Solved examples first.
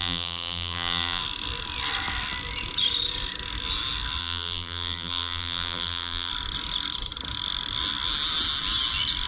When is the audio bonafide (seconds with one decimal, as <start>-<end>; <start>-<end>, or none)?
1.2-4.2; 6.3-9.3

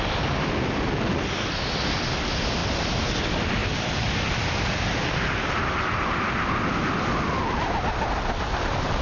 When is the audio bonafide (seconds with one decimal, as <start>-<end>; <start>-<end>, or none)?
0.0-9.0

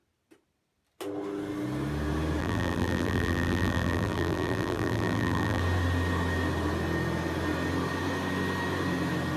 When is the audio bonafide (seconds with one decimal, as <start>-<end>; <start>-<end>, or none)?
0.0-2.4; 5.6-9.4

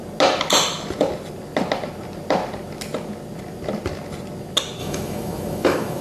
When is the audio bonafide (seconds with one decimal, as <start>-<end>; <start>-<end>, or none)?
0.0-4.8

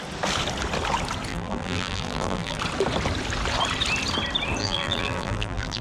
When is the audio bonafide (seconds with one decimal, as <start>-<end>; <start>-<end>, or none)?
0.0-1.3; 2.6-4.6

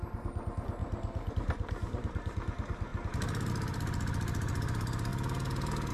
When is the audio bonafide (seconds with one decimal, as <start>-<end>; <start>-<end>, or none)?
0.8-1.3; 5.1-5.9